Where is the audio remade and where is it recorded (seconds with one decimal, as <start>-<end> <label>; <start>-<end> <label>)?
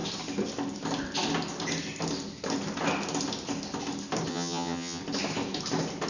0.0-4.3 recorded; 4.3-5.0 remade; 5.0-6.1 recorded